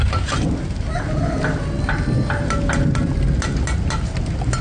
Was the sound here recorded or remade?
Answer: recorded